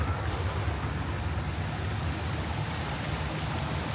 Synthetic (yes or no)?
no